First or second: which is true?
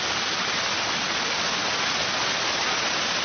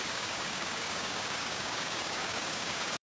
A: first